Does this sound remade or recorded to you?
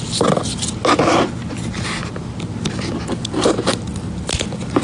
recorded